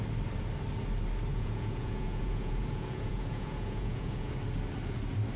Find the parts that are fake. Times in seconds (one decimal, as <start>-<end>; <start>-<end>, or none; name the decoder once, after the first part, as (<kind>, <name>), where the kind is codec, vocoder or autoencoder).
1.3-4.4 (vocoder, Vocos)